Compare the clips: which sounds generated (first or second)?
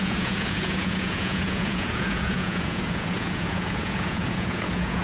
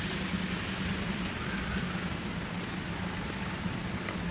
first